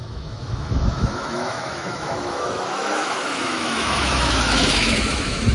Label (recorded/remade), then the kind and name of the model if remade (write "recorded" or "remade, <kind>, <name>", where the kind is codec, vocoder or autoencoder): remade, autoencoder, DAC-VAE